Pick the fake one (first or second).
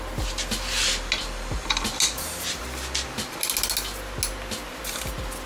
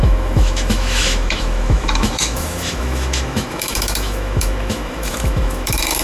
second